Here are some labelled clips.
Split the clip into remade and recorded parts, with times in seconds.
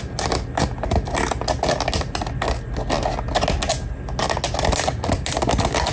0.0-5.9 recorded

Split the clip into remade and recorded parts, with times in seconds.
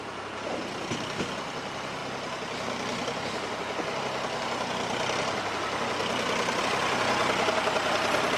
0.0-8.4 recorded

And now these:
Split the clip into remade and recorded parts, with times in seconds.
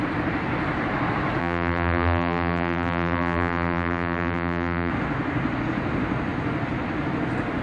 0.0-1.4 recorded; 1.4-4.9 remade; 4.9-7.6 recorded